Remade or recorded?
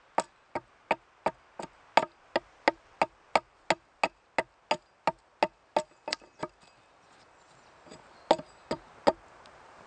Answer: recorded